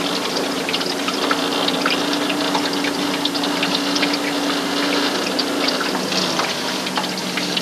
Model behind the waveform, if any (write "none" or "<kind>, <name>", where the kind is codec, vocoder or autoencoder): none